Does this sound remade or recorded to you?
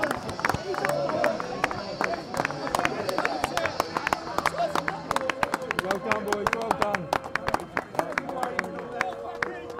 recorded